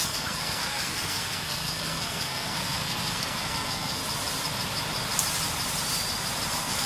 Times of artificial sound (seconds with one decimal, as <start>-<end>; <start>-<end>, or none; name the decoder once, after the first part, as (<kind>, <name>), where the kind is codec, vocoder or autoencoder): 0.0-4.0 (codec, SNAC); 6.5-6.9